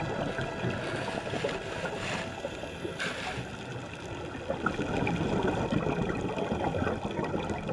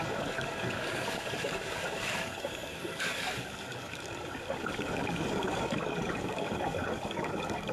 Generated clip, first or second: second